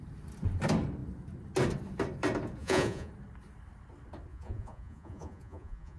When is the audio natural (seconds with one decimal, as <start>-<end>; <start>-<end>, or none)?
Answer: 0.0-2.6; 3.1-4.3